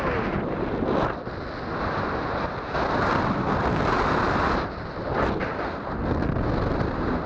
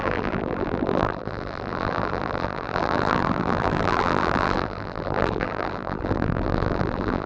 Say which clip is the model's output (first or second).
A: second